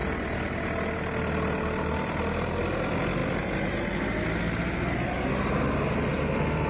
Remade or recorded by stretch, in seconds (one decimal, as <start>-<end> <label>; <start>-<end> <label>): 0.0-6.7 recorded